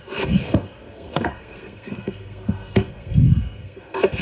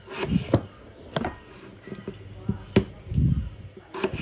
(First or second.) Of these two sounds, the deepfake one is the first